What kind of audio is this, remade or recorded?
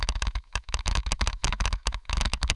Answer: remade